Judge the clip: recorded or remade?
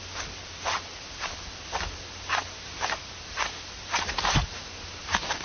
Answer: recorded